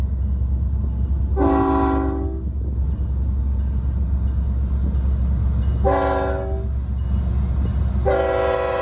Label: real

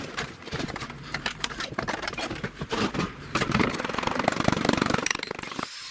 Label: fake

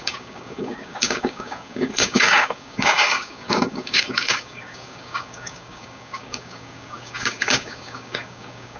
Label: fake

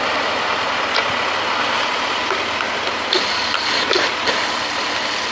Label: real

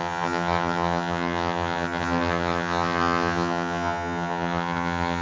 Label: fake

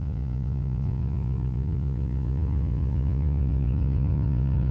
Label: fake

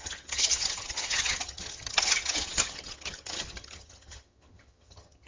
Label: fake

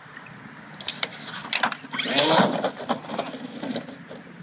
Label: real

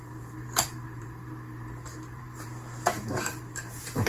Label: fake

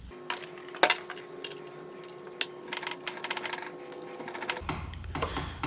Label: real